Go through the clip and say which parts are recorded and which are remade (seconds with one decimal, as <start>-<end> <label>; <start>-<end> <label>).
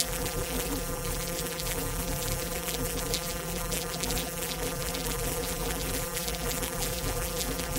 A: 0.0-7.8 remade